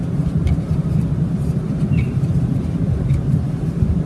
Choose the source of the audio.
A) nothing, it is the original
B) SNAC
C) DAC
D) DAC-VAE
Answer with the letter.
A